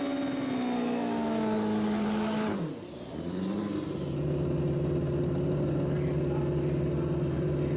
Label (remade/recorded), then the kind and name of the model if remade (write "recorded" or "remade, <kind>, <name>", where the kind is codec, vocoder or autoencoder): recorded